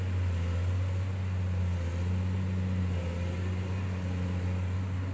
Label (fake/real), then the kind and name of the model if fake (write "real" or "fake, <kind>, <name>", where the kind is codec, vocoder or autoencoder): real